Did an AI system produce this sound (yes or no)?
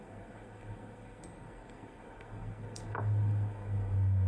yes